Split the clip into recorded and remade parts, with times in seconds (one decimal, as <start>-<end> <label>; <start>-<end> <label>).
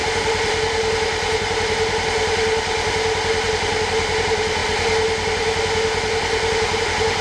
0.0-3.9 recorded; 3.9-4.6 remade; 4.6-6.8 recorded; 6.8-7.2 remade